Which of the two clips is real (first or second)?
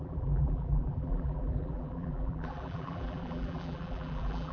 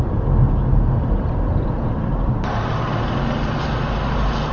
second